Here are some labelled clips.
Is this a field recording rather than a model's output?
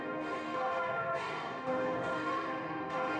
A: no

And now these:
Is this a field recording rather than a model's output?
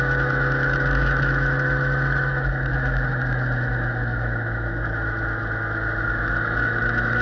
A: no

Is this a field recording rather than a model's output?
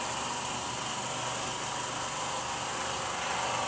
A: yes